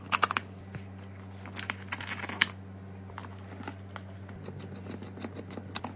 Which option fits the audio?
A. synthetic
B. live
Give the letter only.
B